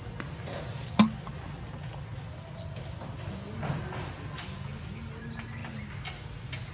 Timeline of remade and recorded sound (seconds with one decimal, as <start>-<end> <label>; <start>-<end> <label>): 0.0-6.7 recorded